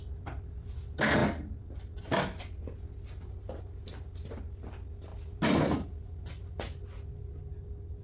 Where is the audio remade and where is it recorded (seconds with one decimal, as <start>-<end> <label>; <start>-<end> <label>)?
0.0-8.0 recorded